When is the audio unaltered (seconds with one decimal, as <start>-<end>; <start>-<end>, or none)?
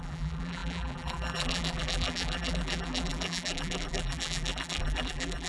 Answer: none